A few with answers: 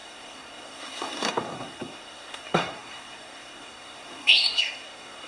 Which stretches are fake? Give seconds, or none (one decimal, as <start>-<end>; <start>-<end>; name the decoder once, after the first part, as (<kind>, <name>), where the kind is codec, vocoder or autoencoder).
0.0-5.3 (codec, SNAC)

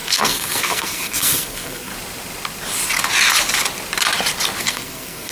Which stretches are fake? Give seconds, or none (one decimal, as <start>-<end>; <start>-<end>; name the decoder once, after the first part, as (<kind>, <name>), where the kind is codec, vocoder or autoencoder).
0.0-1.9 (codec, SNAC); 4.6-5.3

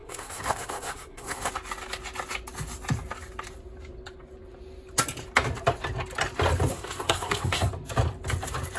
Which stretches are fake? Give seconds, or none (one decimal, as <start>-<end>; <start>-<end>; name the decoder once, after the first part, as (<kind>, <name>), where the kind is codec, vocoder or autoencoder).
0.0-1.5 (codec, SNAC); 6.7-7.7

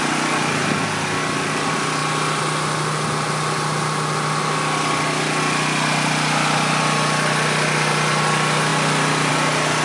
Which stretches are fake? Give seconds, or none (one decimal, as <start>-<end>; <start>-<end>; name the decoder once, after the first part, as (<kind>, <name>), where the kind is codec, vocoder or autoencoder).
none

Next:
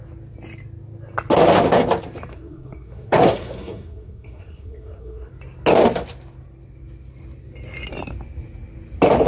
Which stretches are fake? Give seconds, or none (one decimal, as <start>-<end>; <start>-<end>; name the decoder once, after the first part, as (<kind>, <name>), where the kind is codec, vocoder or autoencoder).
2.3-5.3 (codec, SNAC)